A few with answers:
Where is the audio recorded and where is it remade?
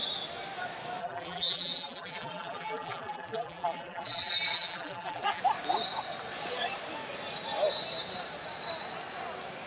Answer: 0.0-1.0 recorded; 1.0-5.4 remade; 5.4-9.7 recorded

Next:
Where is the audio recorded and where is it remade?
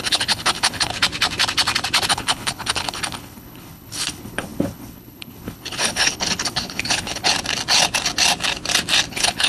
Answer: 0.0-0.9 remade; 0.9-2.1 recorded; 2.1-7.3 remade; 7.3-9.1 recorded; 9.1-9.5 remade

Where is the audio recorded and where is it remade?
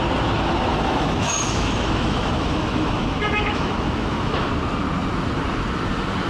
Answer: 0.0-0.7 recorded; 0.7-4.5 remade; 4.5-6.3 recorded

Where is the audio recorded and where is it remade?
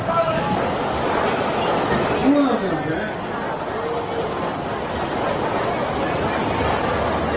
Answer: 0.0-7.4 recorded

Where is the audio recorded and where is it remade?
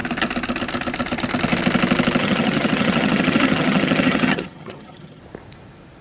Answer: 0.0-2.2 recorded; 2.2-5.2 remade; 5.2-6.0 recorded